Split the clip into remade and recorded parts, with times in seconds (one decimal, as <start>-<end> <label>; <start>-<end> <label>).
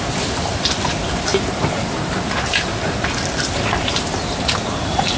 0.0-1.3 recorded; 1.3-4.4 remade; 4.4-5.2 recorded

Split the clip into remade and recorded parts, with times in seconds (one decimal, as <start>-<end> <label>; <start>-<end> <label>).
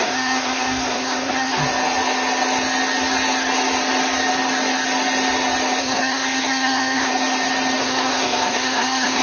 0.0-1.6 remade; 1.6-5.8 recorded; 5.8-7.1 remade; 7.1-7.8 recorded; 7.8-9.2 remade